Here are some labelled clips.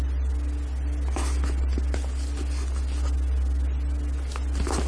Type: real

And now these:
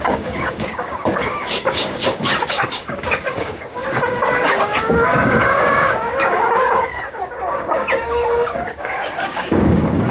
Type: fake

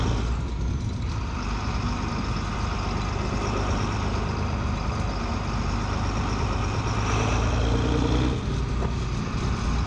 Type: real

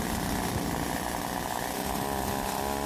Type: real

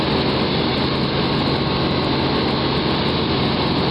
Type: real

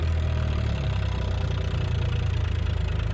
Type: real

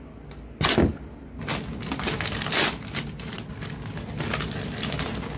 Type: real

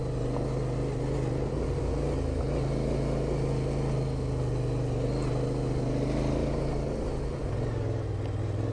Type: real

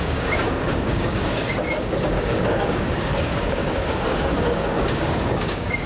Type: fake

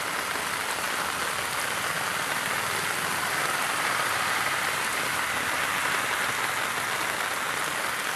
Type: real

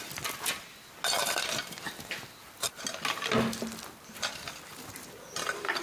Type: real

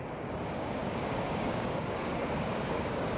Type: fake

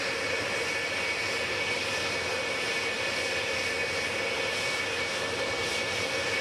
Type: real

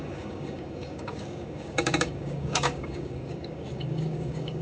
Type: fake